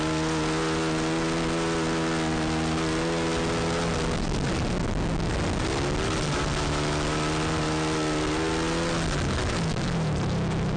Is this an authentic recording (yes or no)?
yes